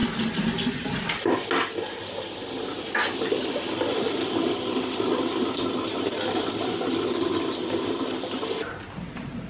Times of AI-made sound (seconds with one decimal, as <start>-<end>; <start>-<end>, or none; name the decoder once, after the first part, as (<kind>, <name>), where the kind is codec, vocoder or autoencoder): none